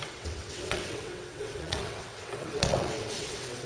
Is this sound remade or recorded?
remade